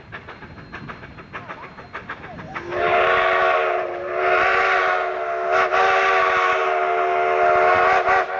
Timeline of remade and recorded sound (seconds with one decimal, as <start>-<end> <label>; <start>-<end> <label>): 0.0-2.7 recorded; 2.7-4.8 remade; 4.8-8.4 recorded